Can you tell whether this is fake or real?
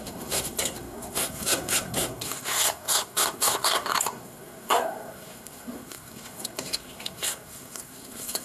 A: fake